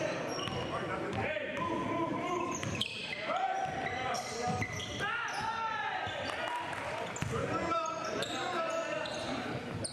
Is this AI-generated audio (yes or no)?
yes